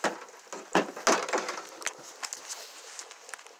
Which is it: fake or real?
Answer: real